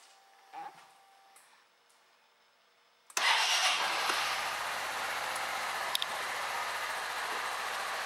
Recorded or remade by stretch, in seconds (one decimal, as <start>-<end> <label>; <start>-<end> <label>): 0.0-8.1 recorded